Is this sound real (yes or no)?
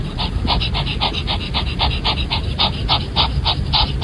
yes